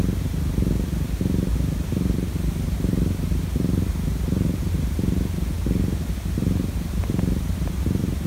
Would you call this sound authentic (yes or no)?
yes